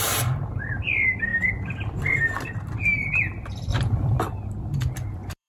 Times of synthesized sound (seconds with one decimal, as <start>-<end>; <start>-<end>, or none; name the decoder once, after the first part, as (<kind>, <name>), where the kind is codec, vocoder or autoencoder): 1.3-2.0 (vocoder, BigVGAN v2); 3.7-4.2; 4.7-5.5